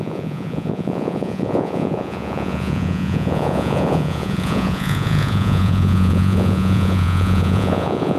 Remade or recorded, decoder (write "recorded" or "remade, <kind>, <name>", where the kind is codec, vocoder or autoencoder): remade, vocoder, Vocos